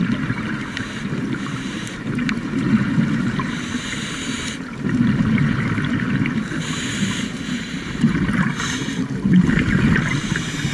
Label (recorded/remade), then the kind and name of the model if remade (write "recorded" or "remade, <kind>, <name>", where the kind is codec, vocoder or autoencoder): remade, vocoder, BigVGAN v2